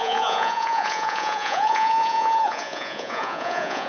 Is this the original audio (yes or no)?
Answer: no